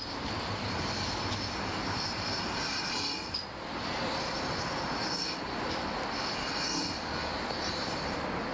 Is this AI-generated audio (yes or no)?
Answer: no